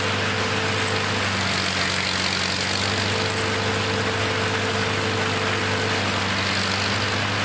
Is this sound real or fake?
real